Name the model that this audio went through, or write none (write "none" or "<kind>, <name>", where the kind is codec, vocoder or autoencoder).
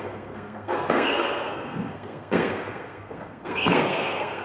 codec, SNAC